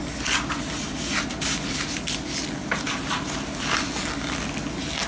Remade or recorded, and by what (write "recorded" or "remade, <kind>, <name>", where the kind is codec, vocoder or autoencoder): recorded